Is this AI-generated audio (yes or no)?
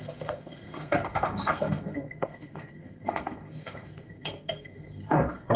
yes